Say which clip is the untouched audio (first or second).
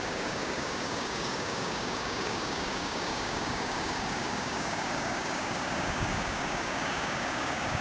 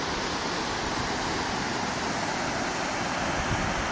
second